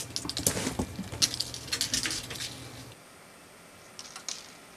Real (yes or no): yes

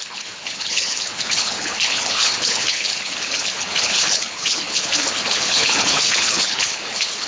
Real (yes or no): no